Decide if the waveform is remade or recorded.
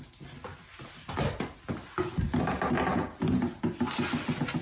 recorded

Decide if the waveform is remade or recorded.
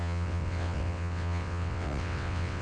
remade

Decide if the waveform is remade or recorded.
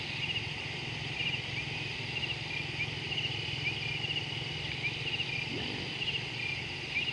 recorded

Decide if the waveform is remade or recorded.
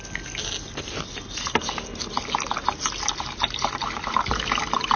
recorded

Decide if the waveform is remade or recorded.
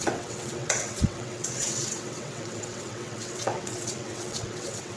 remade